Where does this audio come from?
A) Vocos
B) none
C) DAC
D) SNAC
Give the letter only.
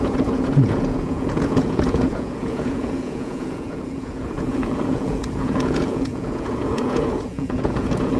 A